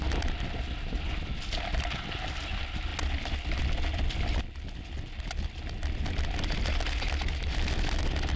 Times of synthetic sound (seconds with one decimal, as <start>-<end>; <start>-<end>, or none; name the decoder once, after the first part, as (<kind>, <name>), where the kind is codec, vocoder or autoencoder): none